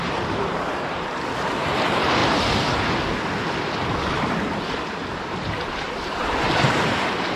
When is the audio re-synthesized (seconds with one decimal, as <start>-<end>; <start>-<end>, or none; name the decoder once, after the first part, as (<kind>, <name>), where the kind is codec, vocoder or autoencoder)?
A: 0.0-2.2 (vocoder, BigVGAN v2); 5.2-7.4